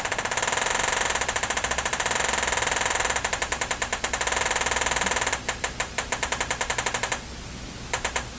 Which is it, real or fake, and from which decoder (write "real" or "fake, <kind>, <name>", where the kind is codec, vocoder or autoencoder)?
real